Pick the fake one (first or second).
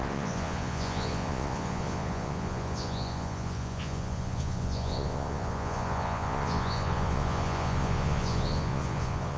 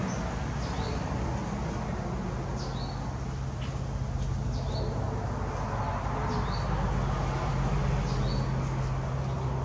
first